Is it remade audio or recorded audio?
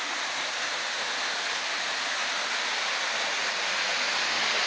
recorded